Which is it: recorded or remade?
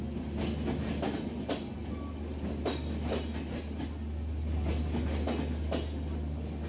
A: recorded